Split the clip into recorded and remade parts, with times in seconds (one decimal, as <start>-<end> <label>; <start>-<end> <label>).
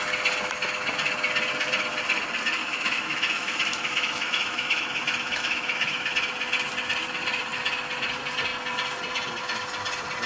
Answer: 0.0-2.6 recorded; 2.6-6.1 remade; 6.1-10.3 recorded